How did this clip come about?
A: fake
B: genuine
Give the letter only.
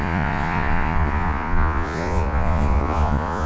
A